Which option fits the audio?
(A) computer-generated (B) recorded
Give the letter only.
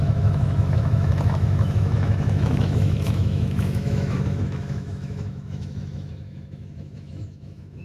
A